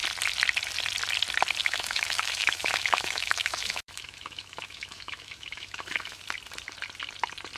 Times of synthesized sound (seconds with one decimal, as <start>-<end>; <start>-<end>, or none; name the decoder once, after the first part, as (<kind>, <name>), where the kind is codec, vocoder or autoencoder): 1.6-6.2 (autoencoder, DAC-VAE)